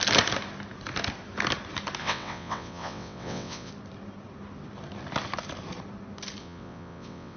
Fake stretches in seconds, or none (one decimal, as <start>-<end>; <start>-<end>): 2.0-3.7; 6.4-7.4